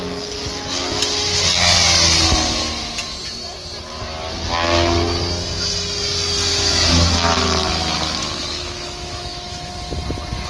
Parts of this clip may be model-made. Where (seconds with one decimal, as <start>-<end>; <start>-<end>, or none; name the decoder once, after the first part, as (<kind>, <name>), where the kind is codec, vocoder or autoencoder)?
6.5-9.7 (autoencoder, DAC-VAE)